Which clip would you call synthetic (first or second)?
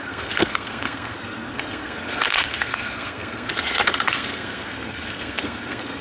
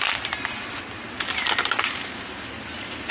first